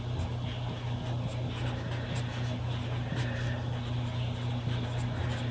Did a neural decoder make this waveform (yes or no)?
no